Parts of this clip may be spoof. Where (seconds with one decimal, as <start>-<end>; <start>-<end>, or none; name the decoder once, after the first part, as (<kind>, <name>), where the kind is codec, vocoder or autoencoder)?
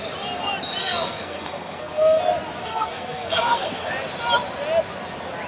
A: 0.8-2.2 (codec, SNAC); 2.6-3.9